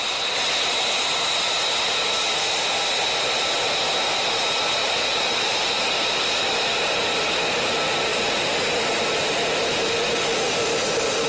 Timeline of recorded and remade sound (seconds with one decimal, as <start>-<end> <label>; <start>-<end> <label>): 0.0-4.8 recorded; 4.8-6.2 remade; 6.2-11.3 recorded